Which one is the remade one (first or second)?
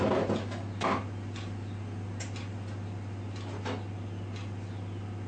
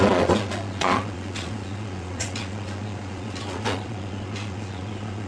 second